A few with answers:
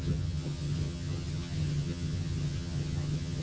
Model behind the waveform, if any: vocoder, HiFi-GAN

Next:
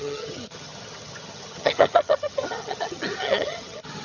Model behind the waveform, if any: vocoder, HiFi-GAN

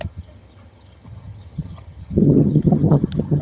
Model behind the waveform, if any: vocoder, HiFi-GAN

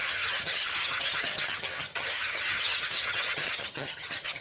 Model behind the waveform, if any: vocoder, HiFi-GAN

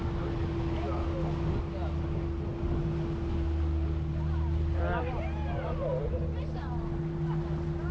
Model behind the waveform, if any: none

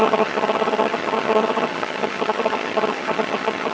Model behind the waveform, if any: vocoder, HiFi-GAN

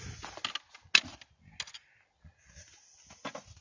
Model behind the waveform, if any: none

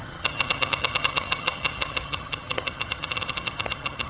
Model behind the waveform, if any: vocoder, HiFi-GAN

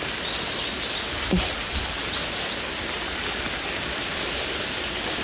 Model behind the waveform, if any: none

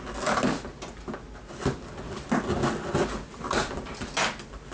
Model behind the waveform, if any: none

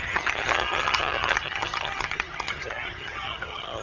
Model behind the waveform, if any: vocoder, HiFi-GAN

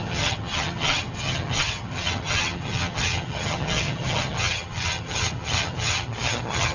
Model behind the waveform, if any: vocoder, HiFi-GAN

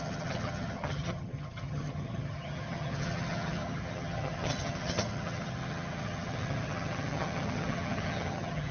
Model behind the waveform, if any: vocoder, HiFi-GAN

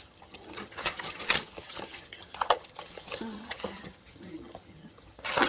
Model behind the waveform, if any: vocoder, HiFi-GAN